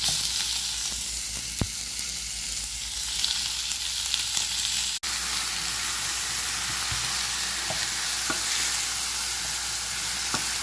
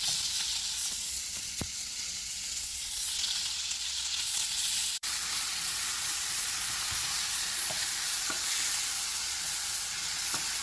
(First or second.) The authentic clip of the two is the first